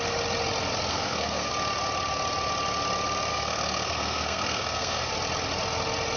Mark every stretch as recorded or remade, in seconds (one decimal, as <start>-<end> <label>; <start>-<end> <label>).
0.0-0.9 recorded; 0.9-1.5 remade; 1.5-3.3 recorded; 3.3-5.1 remade; 5.1-6.2 recorded